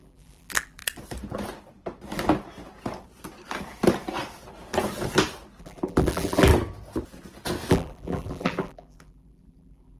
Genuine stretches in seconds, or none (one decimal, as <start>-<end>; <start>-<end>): 0.8-5.6; 6.5-7.7